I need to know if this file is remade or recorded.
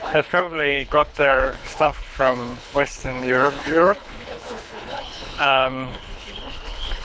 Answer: remade